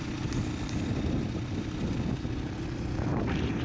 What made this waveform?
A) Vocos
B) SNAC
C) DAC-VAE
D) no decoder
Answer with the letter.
D